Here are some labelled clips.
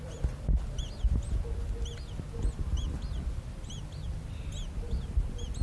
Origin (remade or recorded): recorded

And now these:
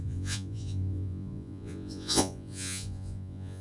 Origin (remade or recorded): remade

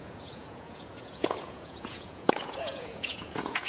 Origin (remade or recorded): remade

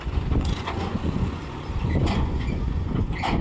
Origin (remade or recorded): remade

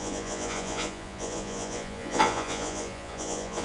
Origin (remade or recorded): remade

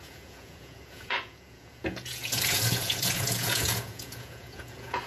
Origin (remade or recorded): remade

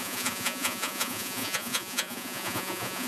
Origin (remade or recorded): remade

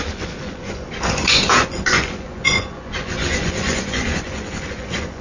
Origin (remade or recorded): remade